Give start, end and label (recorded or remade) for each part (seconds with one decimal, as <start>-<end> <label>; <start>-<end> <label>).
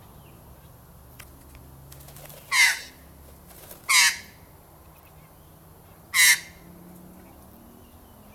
0.0-8.3 recorded